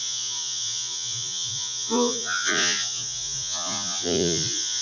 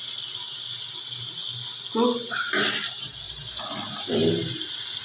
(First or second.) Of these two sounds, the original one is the second